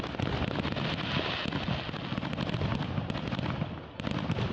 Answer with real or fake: real